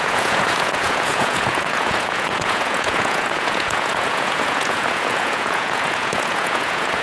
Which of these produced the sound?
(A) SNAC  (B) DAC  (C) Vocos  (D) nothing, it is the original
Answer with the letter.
C